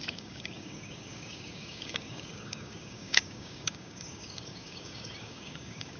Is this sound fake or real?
fake